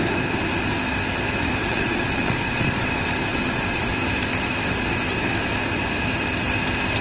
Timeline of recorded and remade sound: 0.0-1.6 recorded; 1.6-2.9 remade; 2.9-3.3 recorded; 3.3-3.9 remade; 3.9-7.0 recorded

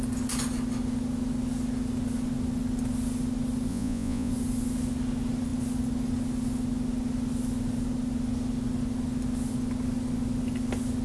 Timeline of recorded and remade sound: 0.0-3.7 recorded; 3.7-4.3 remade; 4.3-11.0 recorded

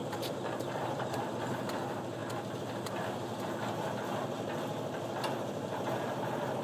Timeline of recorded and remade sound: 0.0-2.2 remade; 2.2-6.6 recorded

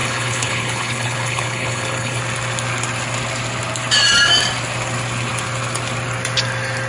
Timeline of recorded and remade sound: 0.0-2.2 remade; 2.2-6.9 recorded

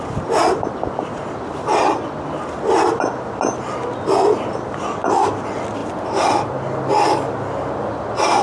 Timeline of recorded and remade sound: 0.0-8.4 recorded

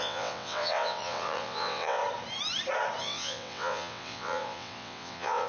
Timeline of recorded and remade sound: 0.0-2.0 remade; 2.0-3.0 recorded; 3.0-5.5 remade

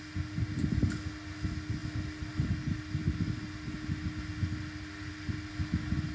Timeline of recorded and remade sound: 0.0-6.1 recorded

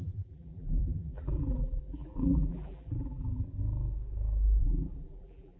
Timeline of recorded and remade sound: 0.0-3.6 remade; 3.6-4.6 recorded; 4.6-5.6 remade